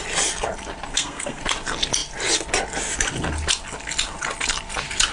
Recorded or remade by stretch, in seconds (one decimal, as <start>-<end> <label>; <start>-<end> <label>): 0.0-0.9 recorded; 0.9-1.4 remade; 1.4-5.1 recorded